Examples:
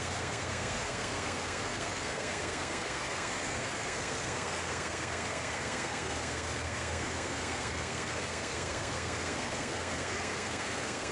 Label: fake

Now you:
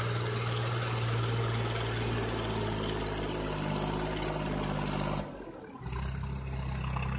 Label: real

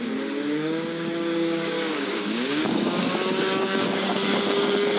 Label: fake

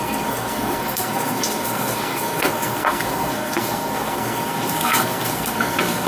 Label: fake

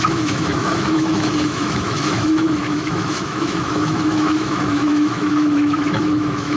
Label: fake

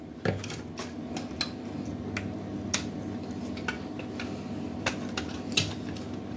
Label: real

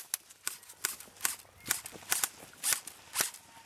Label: real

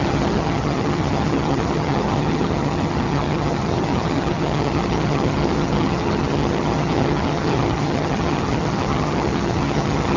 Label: fake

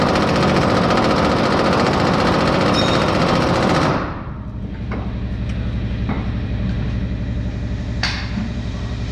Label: fake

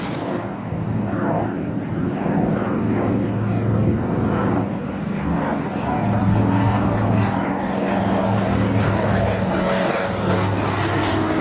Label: fake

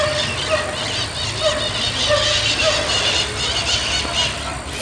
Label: real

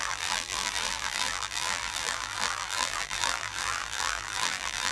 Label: fake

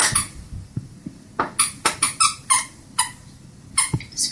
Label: real